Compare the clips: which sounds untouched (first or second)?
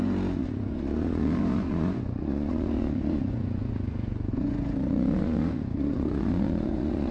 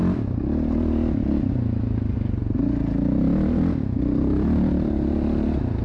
second